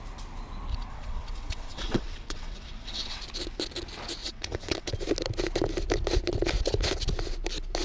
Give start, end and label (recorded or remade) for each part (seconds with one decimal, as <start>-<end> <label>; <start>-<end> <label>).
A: 0.0-0.7 recorded; 0.7-3.2 remade; 3.2-4.2 recorded; 4.2-4.9 remade; 4.9-7.8 recorded